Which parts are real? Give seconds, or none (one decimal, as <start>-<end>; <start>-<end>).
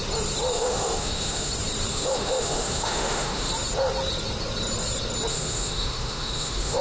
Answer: 0.0-0.5; 1.5-1.9; 3.5-5.3